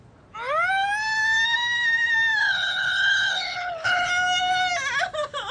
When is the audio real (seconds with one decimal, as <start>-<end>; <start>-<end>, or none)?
0.0-2.4; 4.1-5.5